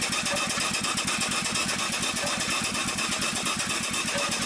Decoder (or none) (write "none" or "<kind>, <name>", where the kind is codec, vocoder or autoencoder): none